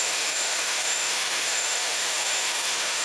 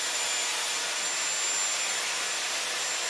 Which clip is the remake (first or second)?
first